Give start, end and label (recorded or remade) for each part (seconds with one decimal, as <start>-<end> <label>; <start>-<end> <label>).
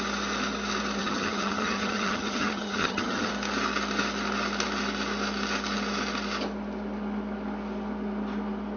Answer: 0.0-1.0 recorded; 1.0-3.3 remade; 3.3-8.8 recorded